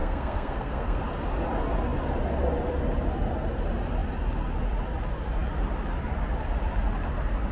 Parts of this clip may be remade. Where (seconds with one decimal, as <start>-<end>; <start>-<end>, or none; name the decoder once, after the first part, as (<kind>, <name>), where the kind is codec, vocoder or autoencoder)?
0.0-1.0 (codec, SNAC)